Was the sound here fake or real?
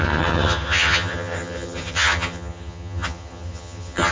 fake